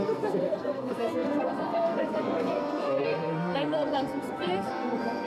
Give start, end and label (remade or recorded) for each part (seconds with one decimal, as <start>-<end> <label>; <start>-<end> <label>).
0.0-5.3 remade